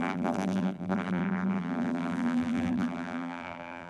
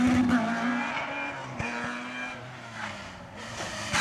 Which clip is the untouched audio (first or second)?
second